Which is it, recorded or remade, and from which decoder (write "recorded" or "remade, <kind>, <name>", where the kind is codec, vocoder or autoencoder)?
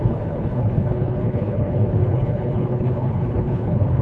remade, codec, HILCodec